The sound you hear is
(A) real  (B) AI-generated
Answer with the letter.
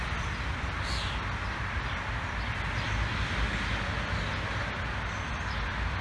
A